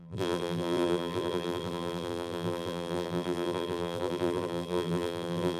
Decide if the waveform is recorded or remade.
remade